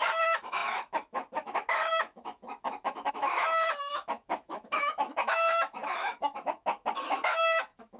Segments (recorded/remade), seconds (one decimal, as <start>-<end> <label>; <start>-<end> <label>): 0.0-8.0 remade